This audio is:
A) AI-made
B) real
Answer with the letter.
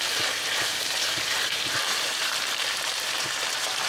A